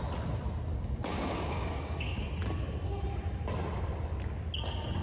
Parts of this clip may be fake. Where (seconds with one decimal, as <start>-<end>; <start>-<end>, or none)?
0.7-2.2